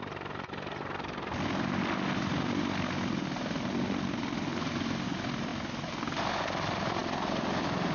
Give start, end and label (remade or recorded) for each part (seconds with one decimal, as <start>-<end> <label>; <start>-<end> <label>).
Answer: 0.0-7.9 recorded